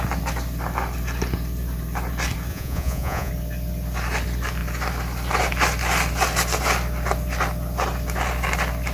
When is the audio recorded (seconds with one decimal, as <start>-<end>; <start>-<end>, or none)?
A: 0.0-2.5; 3.3-8.9

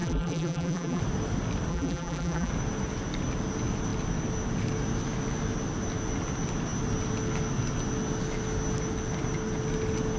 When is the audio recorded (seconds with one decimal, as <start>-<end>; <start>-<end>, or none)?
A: 1.0-1.7; 2.5-10.2